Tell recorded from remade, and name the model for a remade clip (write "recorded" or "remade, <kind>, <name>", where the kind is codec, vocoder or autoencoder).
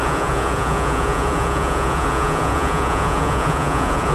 remade, vocoder, Vocos